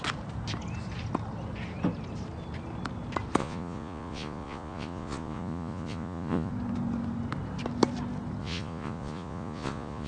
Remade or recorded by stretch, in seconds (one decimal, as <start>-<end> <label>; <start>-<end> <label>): 0.0-3.4 recorded; 3.4-6.5 remade; 6.5-8.4 recorded; 8.4-10.1 remade